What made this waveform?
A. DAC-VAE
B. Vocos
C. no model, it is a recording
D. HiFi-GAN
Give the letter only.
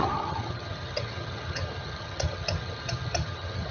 D